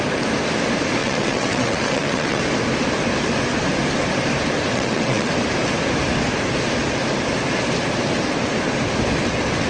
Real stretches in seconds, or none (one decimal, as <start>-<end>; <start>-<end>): 0.0-1.0; 2.4-4.7; 5.3-9.7